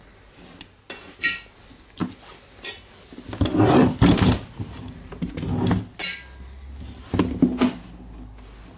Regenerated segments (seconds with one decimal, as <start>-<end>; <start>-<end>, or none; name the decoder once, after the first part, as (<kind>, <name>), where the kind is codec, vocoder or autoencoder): none